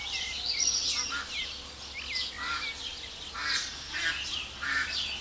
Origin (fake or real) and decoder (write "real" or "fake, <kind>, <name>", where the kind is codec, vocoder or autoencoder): real